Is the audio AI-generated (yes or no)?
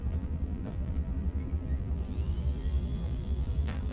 yes